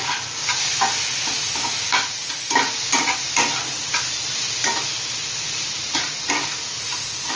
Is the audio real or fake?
real